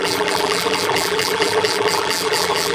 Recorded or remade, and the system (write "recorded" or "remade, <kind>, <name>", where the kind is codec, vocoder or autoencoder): remade, vocoder, BigVGAN v2